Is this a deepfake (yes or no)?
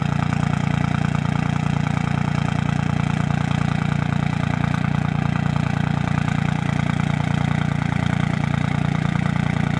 yes